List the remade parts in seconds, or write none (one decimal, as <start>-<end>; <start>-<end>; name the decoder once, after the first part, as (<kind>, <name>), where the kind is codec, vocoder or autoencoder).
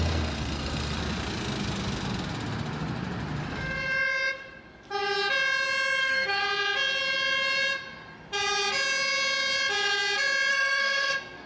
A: 0.0-1.0 (codec, SNAC); 6.0-6.4; 10.5-11.5